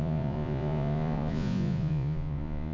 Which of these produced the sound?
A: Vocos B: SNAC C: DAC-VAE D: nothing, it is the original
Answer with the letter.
A